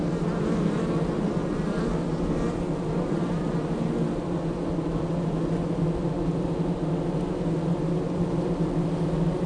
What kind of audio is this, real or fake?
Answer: real